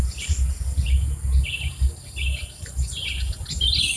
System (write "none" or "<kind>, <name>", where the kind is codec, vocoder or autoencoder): none